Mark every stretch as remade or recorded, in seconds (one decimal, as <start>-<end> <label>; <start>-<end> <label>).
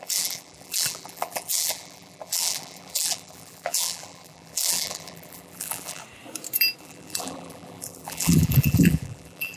0.0-6.0 remade; 6.0-6.8 recorded; 6.8-9.6 remade